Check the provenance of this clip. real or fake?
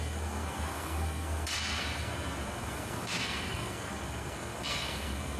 fake